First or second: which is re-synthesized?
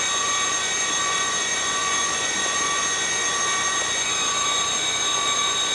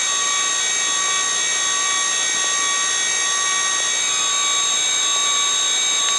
first